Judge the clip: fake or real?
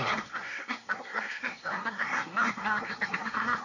fake